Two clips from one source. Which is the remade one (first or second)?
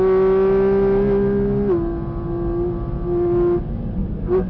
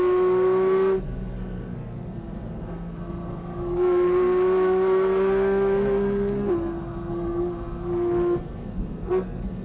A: second